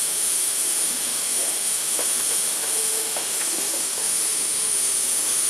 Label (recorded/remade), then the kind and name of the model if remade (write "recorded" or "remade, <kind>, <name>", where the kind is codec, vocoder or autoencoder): remade, autoencoder, DAC-VAE